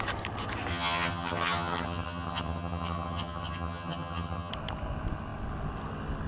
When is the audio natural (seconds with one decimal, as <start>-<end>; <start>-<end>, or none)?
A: 0.0-0.7; 4.5-6.3